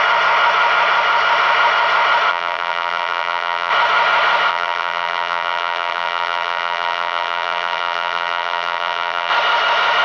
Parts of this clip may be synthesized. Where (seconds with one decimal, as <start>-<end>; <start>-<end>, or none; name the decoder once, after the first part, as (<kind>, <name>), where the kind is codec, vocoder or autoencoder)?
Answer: 2.3-3.7 (vocoder, BigVGAN v2); 4.5-9.3